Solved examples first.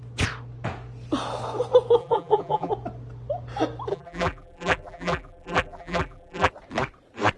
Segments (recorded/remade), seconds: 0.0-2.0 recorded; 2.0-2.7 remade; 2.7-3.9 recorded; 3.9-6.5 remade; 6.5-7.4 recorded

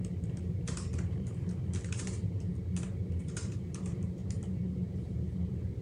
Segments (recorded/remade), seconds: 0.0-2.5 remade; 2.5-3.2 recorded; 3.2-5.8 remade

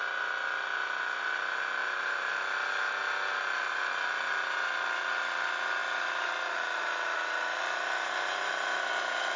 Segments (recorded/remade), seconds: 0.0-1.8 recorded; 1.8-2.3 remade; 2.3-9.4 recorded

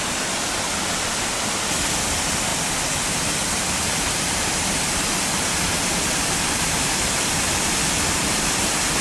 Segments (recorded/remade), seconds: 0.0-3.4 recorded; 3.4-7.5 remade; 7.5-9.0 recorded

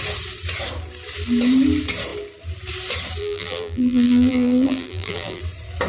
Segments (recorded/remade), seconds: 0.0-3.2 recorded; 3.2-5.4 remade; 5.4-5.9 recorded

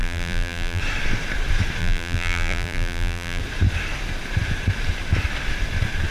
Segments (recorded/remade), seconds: 0.0-0.8 remade; 0.8-1.8 recorded; 1.8-3.4 remade; 3.4-6.1 recorded

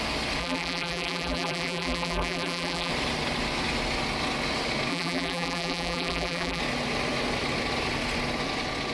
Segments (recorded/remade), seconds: 0.0-0.4 recorded; 0.4-2.9 remade; 2.9-4.9 recorded; 4.9-6.6 remade; 6.6-8.9 recorded

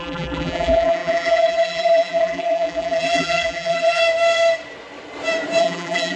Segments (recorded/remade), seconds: 0.0-4.0 remade; 4.0-5.6 recorded; 5.6-6.2 remade